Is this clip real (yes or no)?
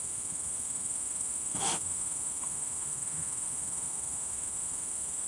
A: no